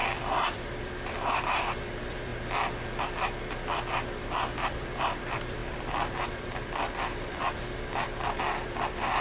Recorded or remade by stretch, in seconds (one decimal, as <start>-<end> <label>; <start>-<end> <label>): 0.0-2.3 remade; 2.3-3.0 recorded; 3.0-9.2 remade